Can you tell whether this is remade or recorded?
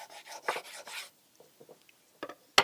recorded